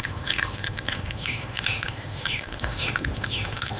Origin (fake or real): fake